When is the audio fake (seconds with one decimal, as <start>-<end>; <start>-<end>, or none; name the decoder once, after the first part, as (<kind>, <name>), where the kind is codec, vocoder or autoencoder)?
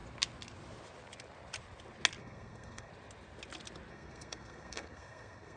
2.2-2.9 (codec, SNAC); 3.9-5.6